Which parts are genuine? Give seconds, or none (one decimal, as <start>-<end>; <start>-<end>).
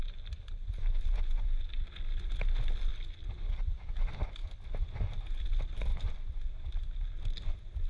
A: 0.0-7.9